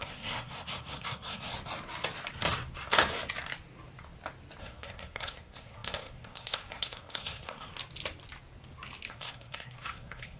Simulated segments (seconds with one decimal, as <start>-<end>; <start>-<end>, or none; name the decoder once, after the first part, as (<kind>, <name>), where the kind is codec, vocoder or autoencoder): 0.0-1.5 (codec, SNAC); 4.6-7.7; 9.1-10.4